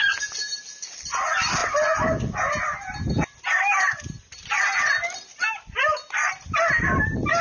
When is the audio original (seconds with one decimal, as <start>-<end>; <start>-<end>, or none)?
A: 0.0-7.4